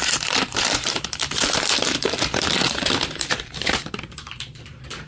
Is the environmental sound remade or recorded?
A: remade